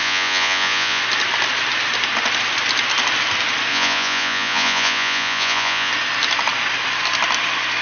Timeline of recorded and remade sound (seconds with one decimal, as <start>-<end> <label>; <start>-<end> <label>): 0.0-1.0 remade; 1.0-3.7 recorded; 3.7-5.9 remade; 5.9-7.8 recorded